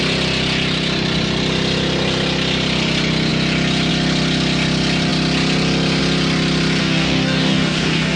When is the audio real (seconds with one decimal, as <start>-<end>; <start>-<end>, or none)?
0.0-6.8